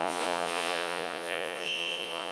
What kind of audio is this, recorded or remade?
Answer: remade